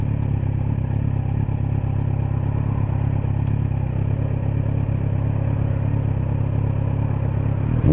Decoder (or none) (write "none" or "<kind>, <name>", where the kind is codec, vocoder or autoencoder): none